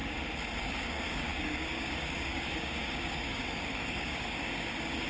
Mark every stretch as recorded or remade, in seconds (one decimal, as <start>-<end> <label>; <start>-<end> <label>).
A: 0.0-0.6 recorded; 0.6-5.1 remade